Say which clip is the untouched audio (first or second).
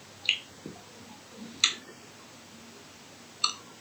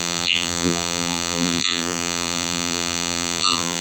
first